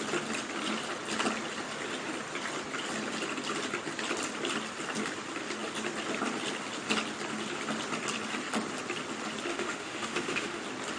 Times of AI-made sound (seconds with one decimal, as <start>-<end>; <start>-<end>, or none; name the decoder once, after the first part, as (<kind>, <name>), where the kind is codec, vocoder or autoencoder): 9.5-10.6 (autoencoder, DAC-VAE)